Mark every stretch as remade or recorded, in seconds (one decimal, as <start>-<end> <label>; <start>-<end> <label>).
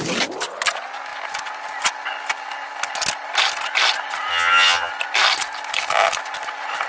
0.0-4.3 recorded; 4.3-4.9 remade; 4.9-6.9 recorded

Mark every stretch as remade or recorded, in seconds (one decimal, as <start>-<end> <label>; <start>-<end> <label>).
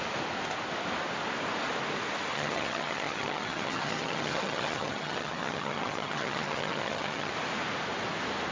0.0-2.3 recorded; 2.3-7.3 remade; 7.3-8.5 recorded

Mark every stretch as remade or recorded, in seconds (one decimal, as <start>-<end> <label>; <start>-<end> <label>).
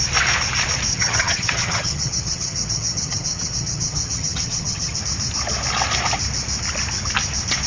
0.0-0.9 recorded; 0.9-5.0 remade; 5.0-7.7 recorded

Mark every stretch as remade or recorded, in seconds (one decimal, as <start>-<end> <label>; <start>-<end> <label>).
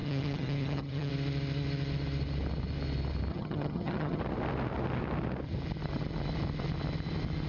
0.0-1.1 remade; 1.1-3.3 recorded; 3.3-4.2 remade; 4.2-7.5 recorded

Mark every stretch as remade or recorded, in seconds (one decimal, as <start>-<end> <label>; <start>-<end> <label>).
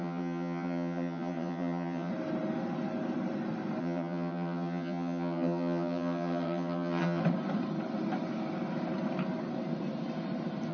0.0-2.1 remade; 2.1-3.8 recorded; 3.8-7.2 remade; 7.2-10.7 recorded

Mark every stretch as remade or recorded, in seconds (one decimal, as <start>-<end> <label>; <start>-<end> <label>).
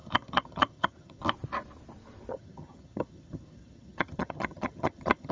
0.0-1.2 remade; 1.2-2.3 recorded; 2.3-5.3 remade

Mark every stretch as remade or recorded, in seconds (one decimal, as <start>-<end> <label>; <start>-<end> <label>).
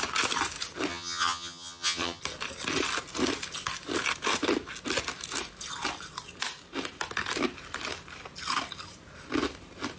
0.0-0.9 recorded; 0.9-2.2 remade; 2.2-10.0 recorded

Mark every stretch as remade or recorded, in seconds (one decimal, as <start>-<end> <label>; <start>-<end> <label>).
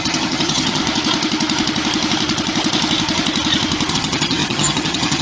0.0-0.8 remade; 0.8-3.9 recorded; 3.9-5.2 remade